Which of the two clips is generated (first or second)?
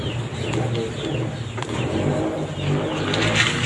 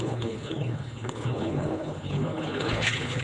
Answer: second